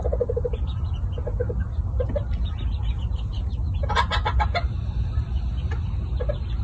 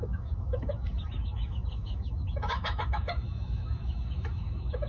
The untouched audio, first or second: first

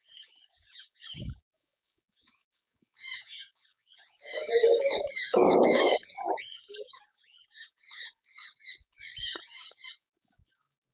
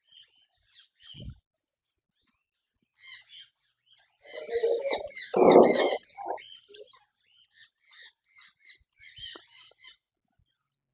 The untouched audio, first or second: second